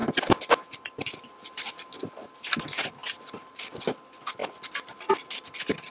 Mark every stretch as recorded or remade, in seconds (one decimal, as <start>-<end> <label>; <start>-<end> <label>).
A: 0.0-5.9 recorded